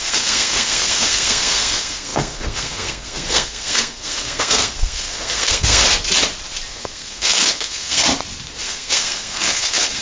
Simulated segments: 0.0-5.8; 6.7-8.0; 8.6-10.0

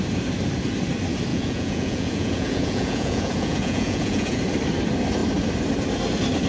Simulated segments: 1.3-4.4

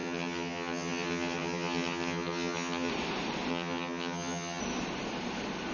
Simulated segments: 0.0-2.9; 3.5-4.6

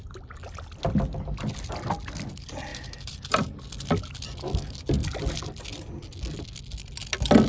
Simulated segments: 2.7-3.6

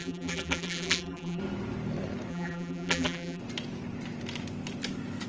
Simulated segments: 0.0-1.4; 2.3-3.4